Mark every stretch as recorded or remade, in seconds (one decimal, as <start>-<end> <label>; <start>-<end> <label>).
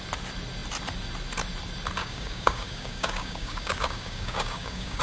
0.0-2.0 recorded; 2.0-5.0 remade